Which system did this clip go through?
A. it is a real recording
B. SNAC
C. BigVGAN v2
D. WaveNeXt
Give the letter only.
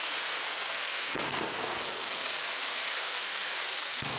B